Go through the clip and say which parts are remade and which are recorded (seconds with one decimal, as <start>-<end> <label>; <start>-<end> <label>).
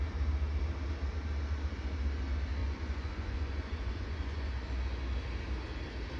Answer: 0.0-2.6 recorded; 2.6-4.5 remade; 4.5-6.2 recorded